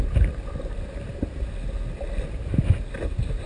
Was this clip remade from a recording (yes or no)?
no